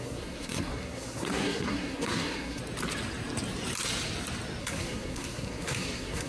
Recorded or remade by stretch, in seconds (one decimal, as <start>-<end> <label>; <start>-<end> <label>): 0.0-2.6 remade; 2.6-4.6 recorded; 4.6-6.3 remade